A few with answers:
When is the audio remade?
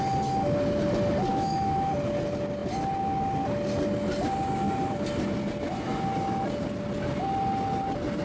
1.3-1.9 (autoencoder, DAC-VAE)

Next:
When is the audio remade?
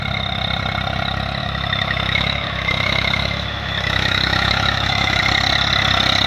1.4-5.2 (autoencoder, DAC-VAE)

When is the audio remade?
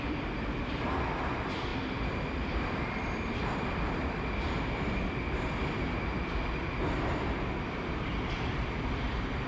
0.0-9.5 (vocoder, BigVGAN v2)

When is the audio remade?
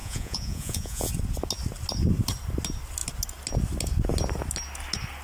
0.0-1.1 (vocoder, Vocos)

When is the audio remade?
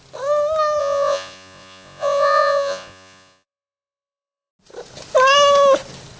0.8-4.5 (vocoder, Vocos)